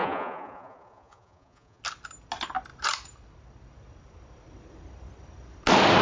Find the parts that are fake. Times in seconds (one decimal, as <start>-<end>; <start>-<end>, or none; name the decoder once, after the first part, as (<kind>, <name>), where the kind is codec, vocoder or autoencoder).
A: 0.0-1.8 (vocoder, Vocos)

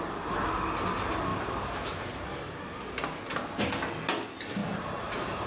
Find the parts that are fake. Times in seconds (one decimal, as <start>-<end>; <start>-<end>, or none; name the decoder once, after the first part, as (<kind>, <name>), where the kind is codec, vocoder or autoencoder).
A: 1.3-2.9 (vocoder, BigVGAN v2); 4.6-5.5